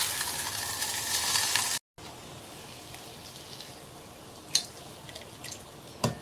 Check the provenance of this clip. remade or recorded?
recorded